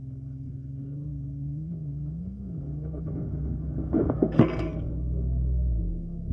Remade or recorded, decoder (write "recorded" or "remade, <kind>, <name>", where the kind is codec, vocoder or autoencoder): remade, codec, SNAC